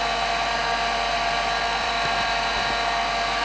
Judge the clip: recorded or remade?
remade